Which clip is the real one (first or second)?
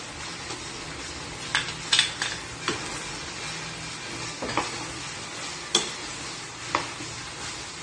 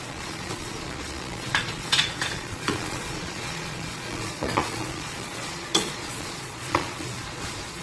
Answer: first